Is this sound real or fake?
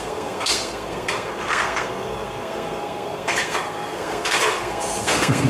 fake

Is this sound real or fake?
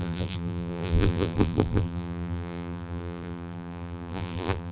fake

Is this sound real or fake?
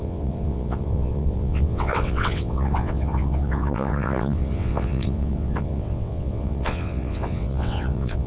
fake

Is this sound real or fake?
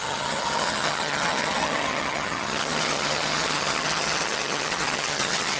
fake